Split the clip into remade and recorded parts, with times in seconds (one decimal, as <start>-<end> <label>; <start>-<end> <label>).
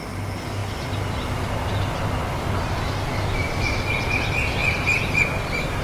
0.0-5.8 recorded